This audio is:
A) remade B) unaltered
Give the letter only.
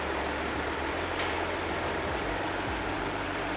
B